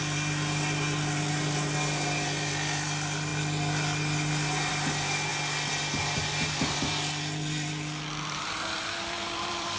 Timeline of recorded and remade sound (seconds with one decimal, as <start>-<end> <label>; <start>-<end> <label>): 0.0-3.3 remade; 3.3-4.7 recorded; 4.7-5.3 remade; 5.3-6.0 recorded; 6.0-9.8 remade

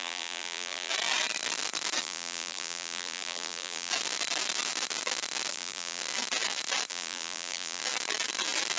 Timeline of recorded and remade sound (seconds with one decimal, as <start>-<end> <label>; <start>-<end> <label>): 0.0-0.9 remade; 0.9-2.0 recorded; 2.0-3.9 remade; 3.9-5.5 recorded; 5.5-6.0 remade; 6.0-6.9 recorded; 6.9-7.8 remade; 7.8-8.8 recorded